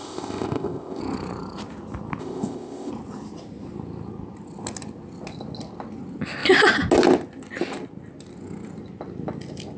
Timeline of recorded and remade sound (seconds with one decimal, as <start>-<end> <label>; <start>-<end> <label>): 0.0-1.0 remade; 1.0-2.2 recorded; 2.2-2.9 remade; 2.9-9.8 recorded